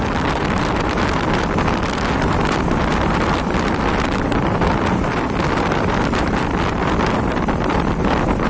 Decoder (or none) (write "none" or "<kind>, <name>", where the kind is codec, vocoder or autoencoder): vocoder, BigVGAN v2